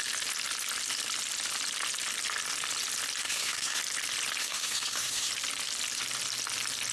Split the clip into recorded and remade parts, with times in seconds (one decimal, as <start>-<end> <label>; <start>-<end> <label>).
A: 0.0-3.2 recorded; 3.2-3.8 remade; 3.8-4.4 recorded; 4.4-5.3 remade; 5.3-6.9 recorded